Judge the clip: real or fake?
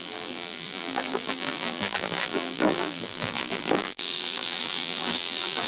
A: fake